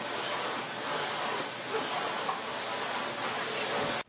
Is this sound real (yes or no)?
yes